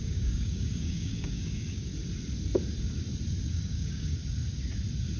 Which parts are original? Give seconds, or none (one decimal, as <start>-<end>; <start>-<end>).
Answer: 1.9-3.5; 4.2-5.2